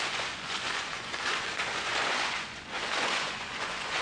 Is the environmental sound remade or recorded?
remade